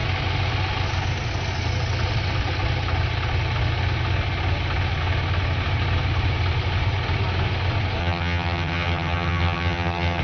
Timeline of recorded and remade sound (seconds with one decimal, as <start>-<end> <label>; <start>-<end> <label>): 0.0-8.0 recorded; 8.0-10.2 remade